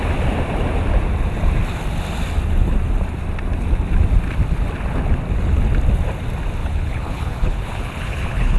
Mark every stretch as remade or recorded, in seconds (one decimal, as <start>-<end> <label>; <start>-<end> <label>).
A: 0.0-6.6 recorded; 6.6-8.6 remade

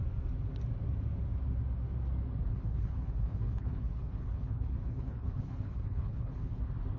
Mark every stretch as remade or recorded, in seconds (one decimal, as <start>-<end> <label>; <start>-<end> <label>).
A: 0.0-2.5 recorded; 2.5-6.6 remade; 6.6-7.0 recorded

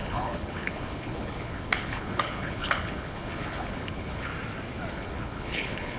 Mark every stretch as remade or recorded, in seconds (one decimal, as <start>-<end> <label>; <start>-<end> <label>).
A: 0.0-4.3 remade; 4.3-4.9 recorded; 4.9-6.0 remade

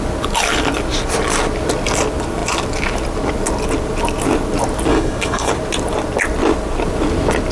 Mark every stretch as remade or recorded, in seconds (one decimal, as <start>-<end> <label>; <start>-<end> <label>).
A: 0.0-4.9 recorded; 4.9-5.5 remade; 5.5-7.5 recorded

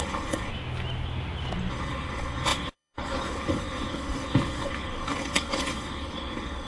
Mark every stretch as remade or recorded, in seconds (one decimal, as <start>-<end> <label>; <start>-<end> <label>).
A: 0.0-0.5 remade; 0.5-1.7 recorded; 1.7-6.7 remade

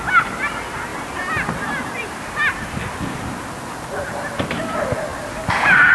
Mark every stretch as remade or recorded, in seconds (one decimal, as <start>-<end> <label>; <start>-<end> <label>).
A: 0.0-5.9 recorded

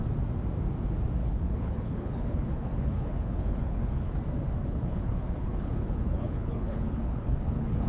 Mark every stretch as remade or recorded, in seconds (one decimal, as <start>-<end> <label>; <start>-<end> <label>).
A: 0.0-1.2 recorded; 1.2-4.1 remade; 4.1-4.6 recorded; 4.6-7.9 remade

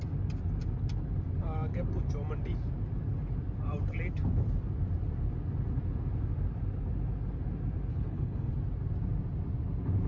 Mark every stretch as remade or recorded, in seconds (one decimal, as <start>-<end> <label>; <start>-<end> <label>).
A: 0.0-7.9 recorded; 7.9-8.5 remade; 8.5-10.1 recorded